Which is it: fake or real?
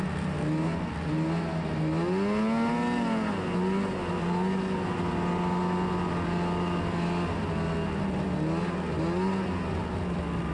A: real